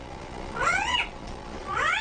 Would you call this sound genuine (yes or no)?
no